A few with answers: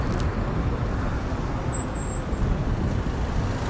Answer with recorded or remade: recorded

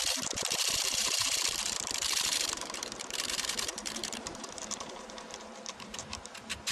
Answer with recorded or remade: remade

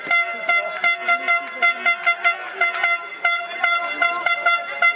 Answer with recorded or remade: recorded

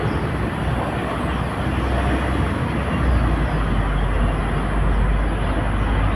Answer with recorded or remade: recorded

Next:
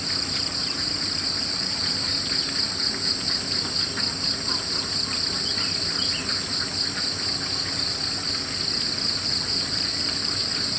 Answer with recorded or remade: recorded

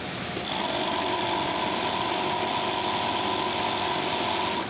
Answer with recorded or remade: recorded